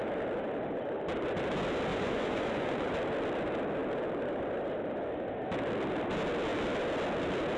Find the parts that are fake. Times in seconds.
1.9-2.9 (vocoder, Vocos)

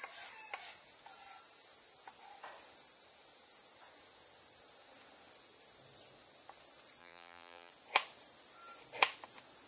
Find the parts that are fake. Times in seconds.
7.0-7.7 (vocoder, BigVGAN v2)

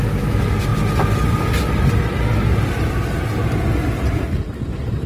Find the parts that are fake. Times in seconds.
none

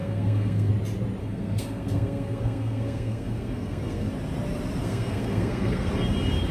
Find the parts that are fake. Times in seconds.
0.0-0.7 (codec, SNAC); 1.2-4.1; 4.8-5.9

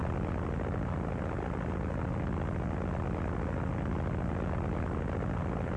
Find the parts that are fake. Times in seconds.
none

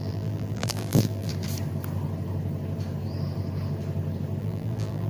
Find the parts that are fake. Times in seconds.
0.0-1.3 (vocoder, BigVGAN v2); 4.4-5.1

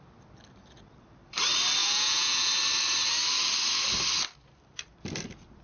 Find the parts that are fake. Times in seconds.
1.8-2.5 (vocoder, Vocos)